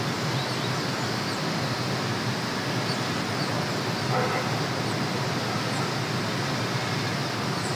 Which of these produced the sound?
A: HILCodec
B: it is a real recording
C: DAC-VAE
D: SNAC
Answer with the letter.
B